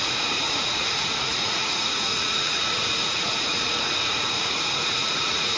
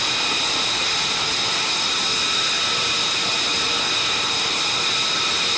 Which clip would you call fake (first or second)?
first